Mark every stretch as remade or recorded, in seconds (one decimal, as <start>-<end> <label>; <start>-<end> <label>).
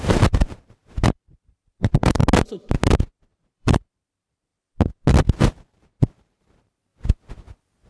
0.0-2.2 remade; 2.2-3.4 recorded; 3.4-4.5 remade; 4.5-6.0 recorded; 6.0-6.9 remade; 6.9-7.9 recorded